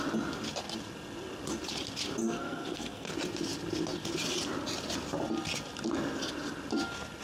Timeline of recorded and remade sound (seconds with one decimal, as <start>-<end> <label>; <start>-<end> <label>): 0.0-2.2 recorded; 2.2-3.1 remade; 3.1-7.2 recorded